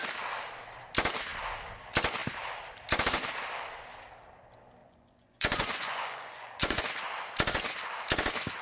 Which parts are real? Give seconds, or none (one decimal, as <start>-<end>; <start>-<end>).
0.0-4.8; 6.8-8.6